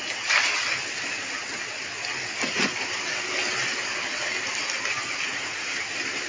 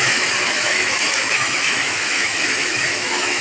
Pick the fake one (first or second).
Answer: second